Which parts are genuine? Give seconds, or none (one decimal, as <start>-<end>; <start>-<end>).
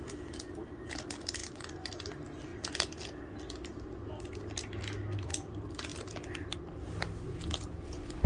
0.0-1.4; 1.9-8.3